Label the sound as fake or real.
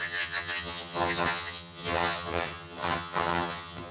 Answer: fake